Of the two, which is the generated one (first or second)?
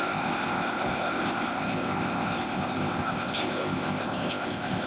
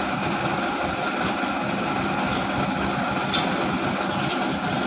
first